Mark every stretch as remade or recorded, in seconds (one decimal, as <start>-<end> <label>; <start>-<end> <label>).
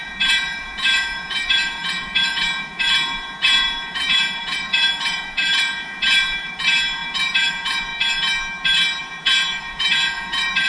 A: 0.0-7.9 remade; 7.9-9.0 recorded; 9.0-10.7 remade